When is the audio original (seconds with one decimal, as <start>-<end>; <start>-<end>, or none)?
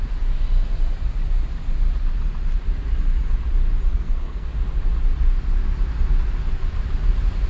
0.0-3.9; 4.5-7.5